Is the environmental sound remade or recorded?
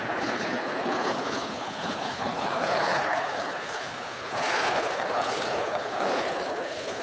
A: remade